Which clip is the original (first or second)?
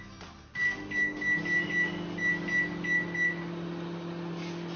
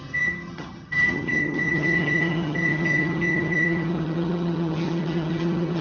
first